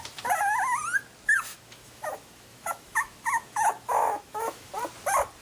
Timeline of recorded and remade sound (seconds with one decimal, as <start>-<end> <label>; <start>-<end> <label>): 0.0-1.5 recorded; 1.5-4.7 remade; 4.7-5.4 recorded